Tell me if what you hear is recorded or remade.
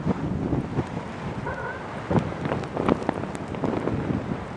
recorded